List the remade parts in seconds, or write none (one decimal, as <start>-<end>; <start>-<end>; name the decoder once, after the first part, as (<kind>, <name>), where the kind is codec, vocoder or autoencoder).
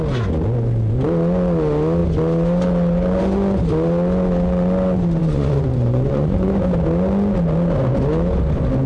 5.2-6.5 (vocoder, Vocos)